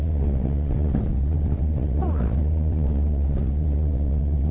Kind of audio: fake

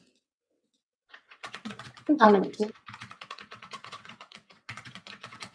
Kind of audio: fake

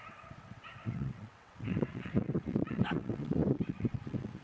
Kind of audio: fake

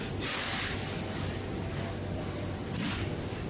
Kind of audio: real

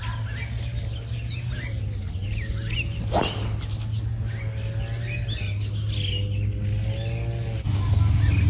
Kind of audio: real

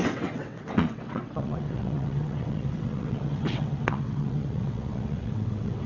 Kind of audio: fake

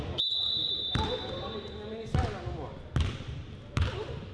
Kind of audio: real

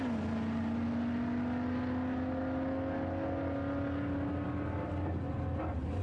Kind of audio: real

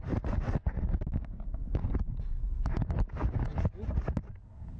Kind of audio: real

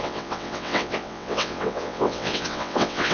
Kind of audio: fake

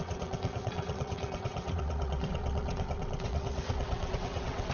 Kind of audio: fake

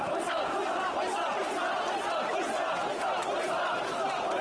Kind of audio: real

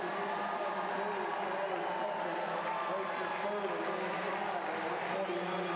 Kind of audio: real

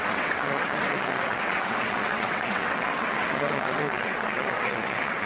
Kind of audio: fake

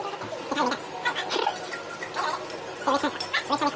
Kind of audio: real